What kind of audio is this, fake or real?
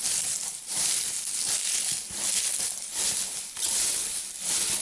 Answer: real